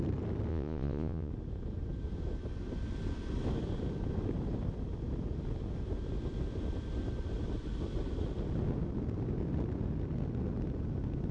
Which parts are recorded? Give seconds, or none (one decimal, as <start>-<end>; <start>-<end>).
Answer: 0.0-0.5; 1.3-11.3